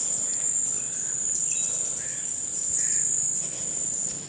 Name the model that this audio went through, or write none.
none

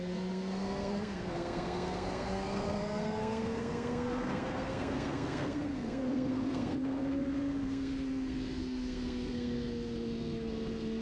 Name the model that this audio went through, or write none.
codec, SNAC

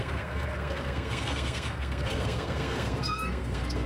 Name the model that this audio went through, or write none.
codec, SNAC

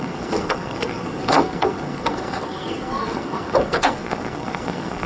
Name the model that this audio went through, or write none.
codec, SNAC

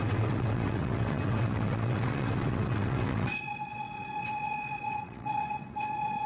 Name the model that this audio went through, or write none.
vocoder, WaveNeXt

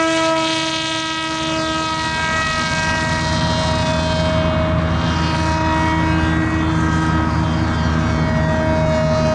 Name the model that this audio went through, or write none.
none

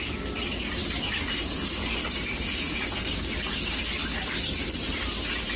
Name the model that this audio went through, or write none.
none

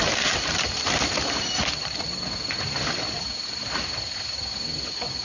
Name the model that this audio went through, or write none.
vocoder, BigVGAN v2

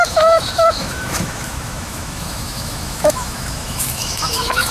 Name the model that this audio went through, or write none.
autoencoder, DAC-VAE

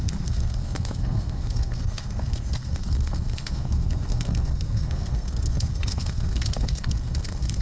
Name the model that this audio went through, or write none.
codec, SNAC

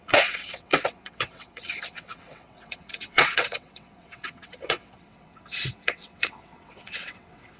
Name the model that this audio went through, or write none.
vocoder, WaveNeXt